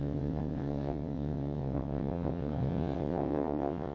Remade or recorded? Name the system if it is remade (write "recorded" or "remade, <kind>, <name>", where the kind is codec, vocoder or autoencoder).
remade, vocoder, WaveNeXt